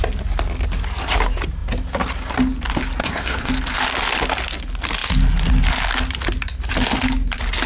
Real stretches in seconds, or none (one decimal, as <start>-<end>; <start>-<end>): 0.0-3.0; 3.5-7.7